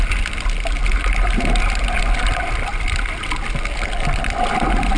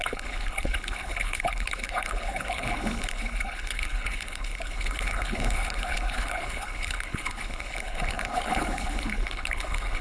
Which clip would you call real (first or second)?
first